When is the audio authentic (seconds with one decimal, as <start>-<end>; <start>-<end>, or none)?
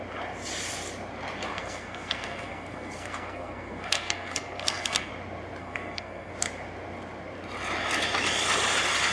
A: 0.0-1.5; 5.1-5.6; 6.3-9.1